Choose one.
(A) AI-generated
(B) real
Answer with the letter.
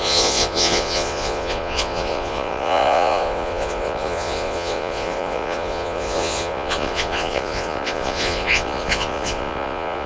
A